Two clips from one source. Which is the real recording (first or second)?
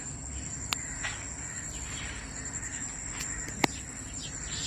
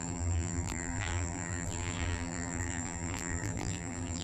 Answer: first